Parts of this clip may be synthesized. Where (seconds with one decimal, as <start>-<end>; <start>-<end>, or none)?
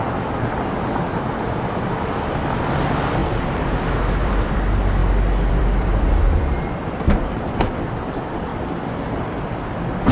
1.4-5.0; 5.5-8.5; 9.2-10.1